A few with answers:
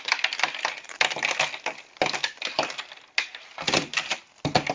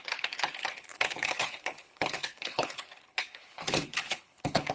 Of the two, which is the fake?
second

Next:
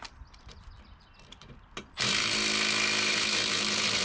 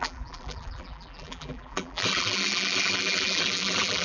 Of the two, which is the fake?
second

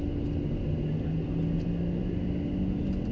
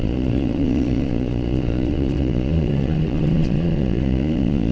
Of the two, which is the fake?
second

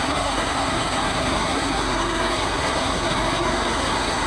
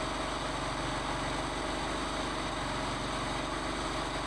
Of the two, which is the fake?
first